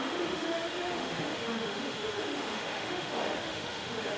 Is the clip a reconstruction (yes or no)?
yes